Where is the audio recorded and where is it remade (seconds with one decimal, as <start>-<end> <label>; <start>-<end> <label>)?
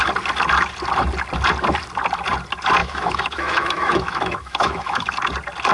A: 0.0-2.8 recorded; 2.8-5.1 remade; 5.1-5.7 recorded